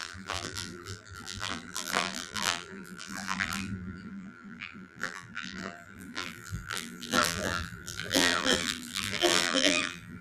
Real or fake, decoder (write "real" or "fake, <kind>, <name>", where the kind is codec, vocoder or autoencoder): fake, vocoder, BigVGAN v2